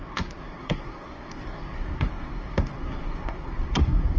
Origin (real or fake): fake